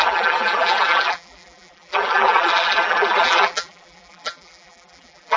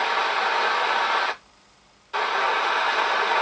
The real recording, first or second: second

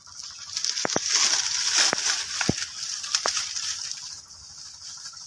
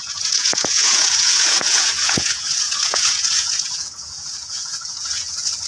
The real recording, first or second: first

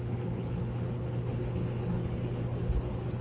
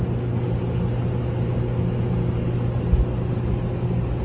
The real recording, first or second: second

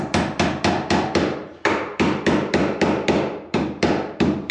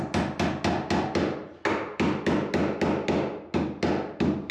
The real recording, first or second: second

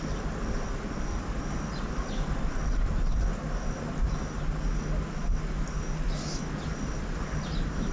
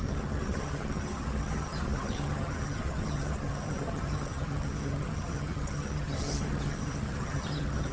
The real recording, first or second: first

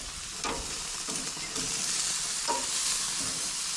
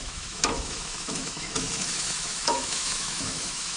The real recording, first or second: first